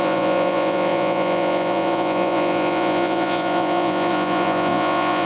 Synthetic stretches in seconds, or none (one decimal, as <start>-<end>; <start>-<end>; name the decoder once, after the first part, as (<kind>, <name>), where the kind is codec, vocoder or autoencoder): 0.0-5.3 (vocoder, Vocos)